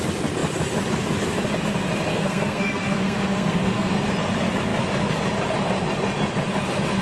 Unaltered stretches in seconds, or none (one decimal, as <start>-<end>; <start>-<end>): 0.0-2.1; 3.9-7.0